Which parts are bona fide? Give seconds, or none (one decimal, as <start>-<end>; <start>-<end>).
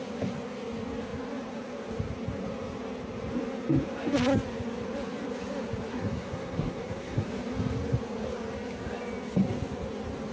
0.0-5.9; 7.3-10.3